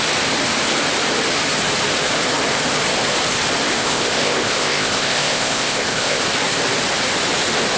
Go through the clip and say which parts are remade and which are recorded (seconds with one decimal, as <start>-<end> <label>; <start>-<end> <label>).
0.0-3.7 recorded; 3.7-6.2 remade; 6.2-7.8 recorded